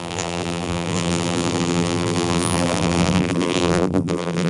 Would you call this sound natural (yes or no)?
no